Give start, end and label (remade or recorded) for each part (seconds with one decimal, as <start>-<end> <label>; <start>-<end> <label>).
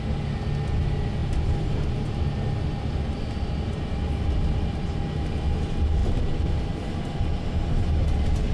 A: 0.0-1.2 recorded; 1.2-5.4 remade; 5.4-6.0 recorded; 6.0-7.2 remade; 7.2-8.5 recorded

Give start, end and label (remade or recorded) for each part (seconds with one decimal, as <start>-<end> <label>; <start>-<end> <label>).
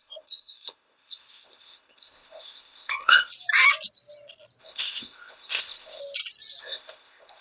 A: 0.0-3.3 remade; 3.3-4.6 recorded; 4.6-6.0 remade; 6.0-6.6 recorded; 6.6-7.4 remade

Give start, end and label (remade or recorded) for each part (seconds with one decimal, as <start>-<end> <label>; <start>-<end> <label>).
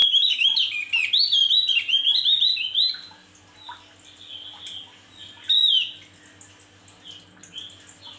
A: 0.0-0.6 remade; 0.6-8.2 recorded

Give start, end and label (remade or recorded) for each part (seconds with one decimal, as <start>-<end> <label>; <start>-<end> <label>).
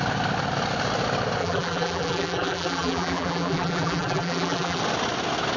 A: 0.0-1.4 recorded; 1.4-4.8 remade; 4.8-5.6 recorded